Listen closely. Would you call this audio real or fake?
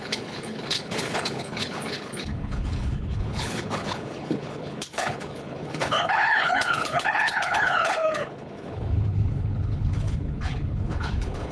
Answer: fake